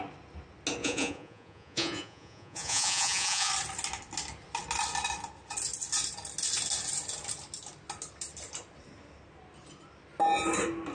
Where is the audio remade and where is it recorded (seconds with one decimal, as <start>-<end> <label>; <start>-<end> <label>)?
0.0-0.8 recorded; 0.8-3.5 remade; 3.5-10.9 recorded